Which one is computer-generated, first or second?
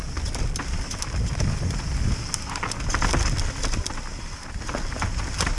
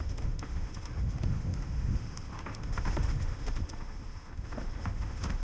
second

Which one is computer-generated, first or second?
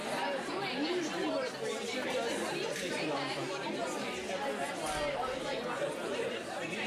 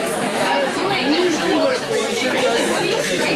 second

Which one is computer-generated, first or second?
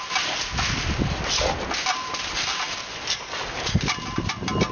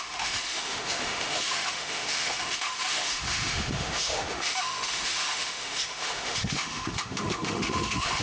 second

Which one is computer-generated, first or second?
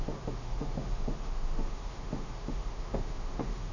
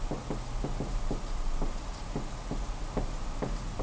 first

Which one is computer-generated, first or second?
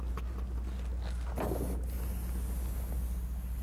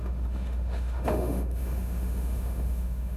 second